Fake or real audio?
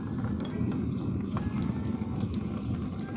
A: real